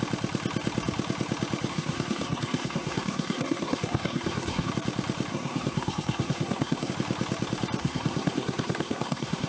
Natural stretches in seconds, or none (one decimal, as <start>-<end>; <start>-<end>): 0.0-1.7; 4.7-5.3; 6.9-7.8